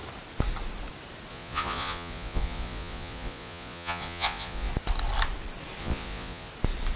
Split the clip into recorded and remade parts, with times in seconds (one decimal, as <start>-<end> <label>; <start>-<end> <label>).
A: 0.0-1.3 recorded; 1.3-4.7 remade; 4.7-5.8 recorded; 5.8-6.5 remade; 6.5-7.0 recorded